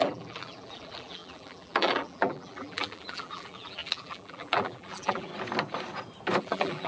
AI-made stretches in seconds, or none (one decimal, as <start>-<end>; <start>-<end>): 0.0-5.3; 6.4-6.9